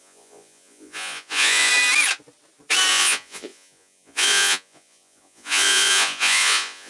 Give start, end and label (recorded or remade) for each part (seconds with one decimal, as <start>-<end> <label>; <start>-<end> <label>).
0.0-1.7 remade; 1.7-2.9 recorded; 2.9-6.9 remade